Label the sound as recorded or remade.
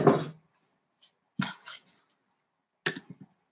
recorded